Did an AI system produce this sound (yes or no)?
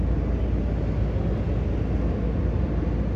no